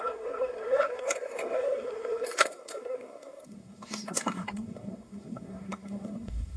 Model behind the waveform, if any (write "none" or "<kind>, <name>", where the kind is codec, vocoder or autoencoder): codec, SNAC